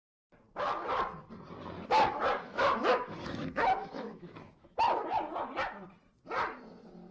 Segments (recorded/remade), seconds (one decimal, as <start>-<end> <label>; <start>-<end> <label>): 0.0-2.5 recorded; 2.5-4.8 remade; 4.8-7.1 recorded